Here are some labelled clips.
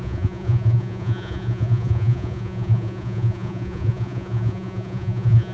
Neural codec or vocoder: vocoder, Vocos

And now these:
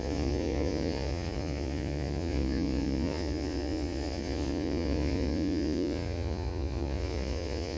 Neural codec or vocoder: vocoder, Vocos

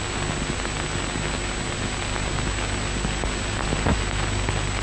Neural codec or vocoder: none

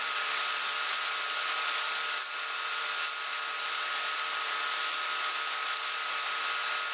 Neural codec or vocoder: vocoder, BigVGAN v2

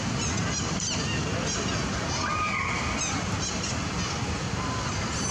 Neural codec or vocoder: none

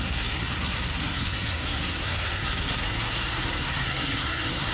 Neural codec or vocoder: codec, SNAC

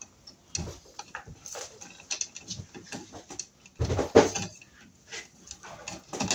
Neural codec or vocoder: none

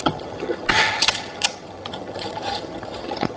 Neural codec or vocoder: vocoder, HiFi-GAN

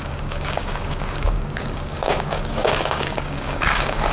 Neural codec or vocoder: codec, DAC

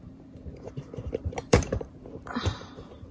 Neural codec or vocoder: vocoder, BigVGAN v2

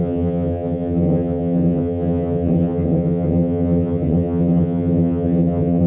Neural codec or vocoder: vocoder, HiFi-GAN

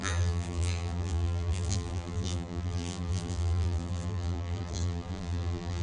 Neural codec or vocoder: vocoder, BigVGAN v2